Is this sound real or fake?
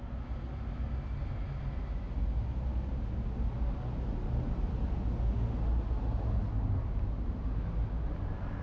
real